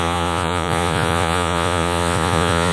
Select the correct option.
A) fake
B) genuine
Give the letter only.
A